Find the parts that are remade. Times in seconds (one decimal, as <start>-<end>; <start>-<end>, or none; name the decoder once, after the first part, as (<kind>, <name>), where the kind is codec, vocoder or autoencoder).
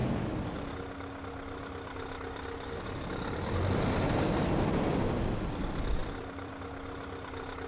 6.0-6.5 (vocoder, BigVGAN v2)